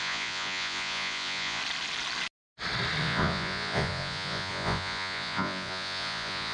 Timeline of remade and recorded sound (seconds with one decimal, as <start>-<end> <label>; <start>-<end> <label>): 0.0-1.6 remade; 1.6-3.0 recorded; 3.0-6.5 remade